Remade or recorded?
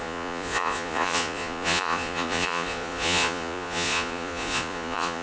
remade